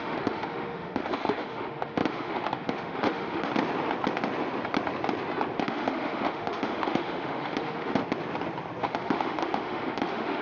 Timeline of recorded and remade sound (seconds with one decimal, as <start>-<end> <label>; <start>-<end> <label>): 0.0-3.5 remade; 3.5-5.6 recorded; 5.6-8.0 remade; 8.0-8.8 recorded; 8.8-10.4 remade